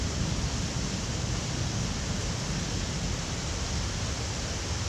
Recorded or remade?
recorded